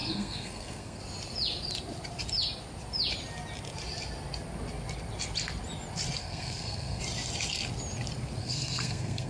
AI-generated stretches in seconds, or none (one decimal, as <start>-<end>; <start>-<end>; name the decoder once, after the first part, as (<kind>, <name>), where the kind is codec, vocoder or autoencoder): 0.0-1.0 (codec, SNAC); 6.2-7.0; 8.4-9.3